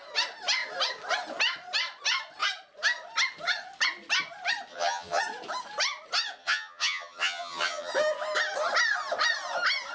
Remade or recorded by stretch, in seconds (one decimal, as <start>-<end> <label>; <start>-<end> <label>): 0.0-4.7 recorded; 4.7-5.2 remade; 5.2-6.4 recorded; 6.4-7.9 remade; 7.9-9.9 recorded